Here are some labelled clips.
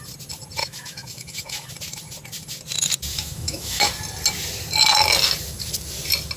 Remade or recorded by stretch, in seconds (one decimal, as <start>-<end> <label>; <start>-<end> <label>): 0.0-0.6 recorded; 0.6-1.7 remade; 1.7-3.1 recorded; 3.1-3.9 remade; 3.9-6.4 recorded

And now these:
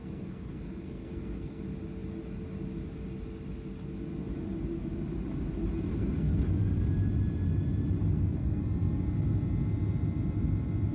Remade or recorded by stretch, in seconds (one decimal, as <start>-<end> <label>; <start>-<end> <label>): 0.0-1.6 remade; 1.6-5.9 recorded; 5.9-6.5 remade; 6.5-8.0 recorded; 8.0-8.6 remade; 8.6-10.9 recorded

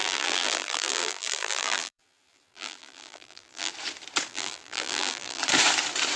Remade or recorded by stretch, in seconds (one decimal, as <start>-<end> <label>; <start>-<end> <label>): 0.0-3.7 remade; 3.7-4.3 recorded; 4.3-5.4 remade; 5.4-6.2 recorded